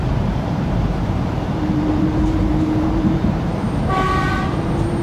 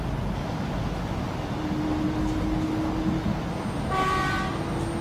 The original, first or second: second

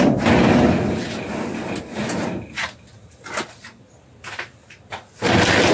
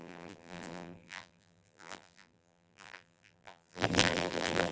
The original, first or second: first